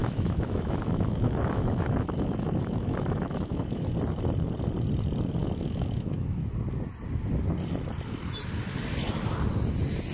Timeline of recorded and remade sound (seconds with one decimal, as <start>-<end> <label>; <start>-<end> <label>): 0.0-3.9 remade; 3.9-5.4 recorded; 5.4-6.5 remade; 6.5-10.1 recorded